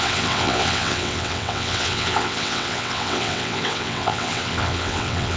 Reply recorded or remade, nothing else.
remade